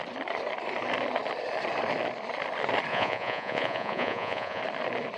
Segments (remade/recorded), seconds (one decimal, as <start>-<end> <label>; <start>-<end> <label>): 0.0-2.9 recorded; 2.9-4.6 remade; 4.6-5.2 recorded